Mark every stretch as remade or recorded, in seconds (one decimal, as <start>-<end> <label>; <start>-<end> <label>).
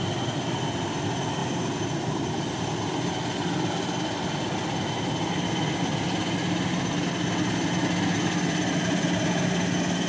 0.0-10.1 recorded